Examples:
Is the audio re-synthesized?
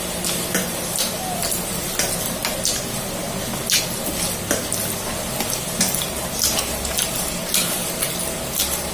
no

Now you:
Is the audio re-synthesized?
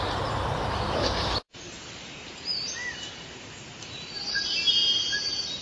yes